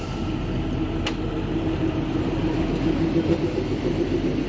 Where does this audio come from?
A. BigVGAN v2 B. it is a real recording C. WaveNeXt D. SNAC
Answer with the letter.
B